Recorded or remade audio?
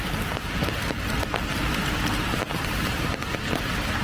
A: recorded